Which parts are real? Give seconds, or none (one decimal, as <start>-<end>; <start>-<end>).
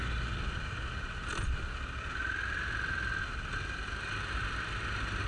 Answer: 0.0-5.3